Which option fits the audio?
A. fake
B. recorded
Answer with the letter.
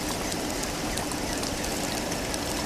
B